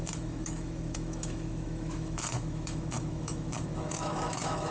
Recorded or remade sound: remade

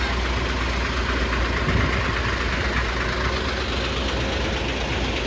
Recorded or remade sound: recorded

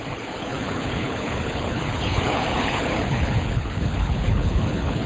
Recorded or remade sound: remade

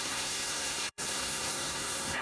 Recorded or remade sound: remade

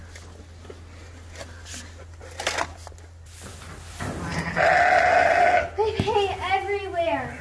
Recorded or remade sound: recorded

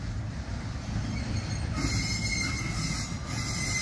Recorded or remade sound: recorded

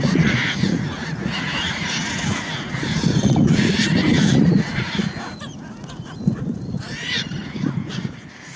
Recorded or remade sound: remade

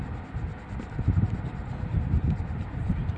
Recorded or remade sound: recorded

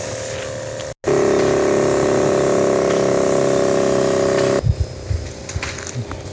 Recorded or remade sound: recorded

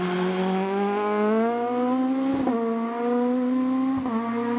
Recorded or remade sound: recorded